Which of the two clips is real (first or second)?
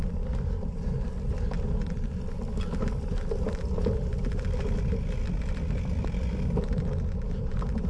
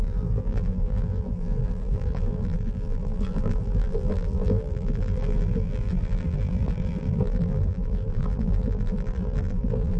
first